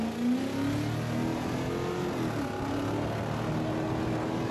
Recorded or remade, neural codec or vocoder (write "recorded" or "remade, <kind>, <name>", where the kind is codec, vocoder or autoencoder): recorded